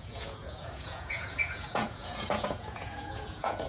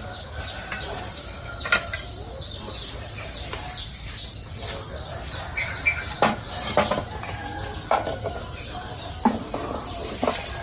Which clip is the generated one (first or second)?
first